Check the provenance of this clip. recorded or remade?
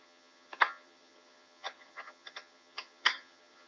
remade